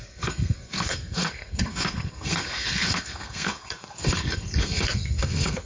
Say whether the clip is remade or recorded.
remade